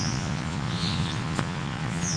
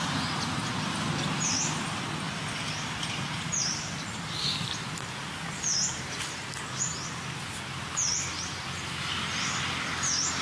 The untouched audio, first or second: second